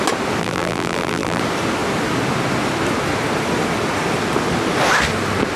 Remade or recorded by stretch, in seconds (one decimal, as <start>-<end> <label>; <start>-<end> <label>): 0.0-0.4 recorded; 0.4-1.4 remade; 1.4-5.6 recorded